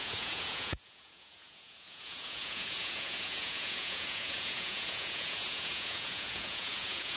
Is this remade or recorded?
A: remade